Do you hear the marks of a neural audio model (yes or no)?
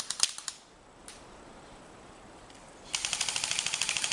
yes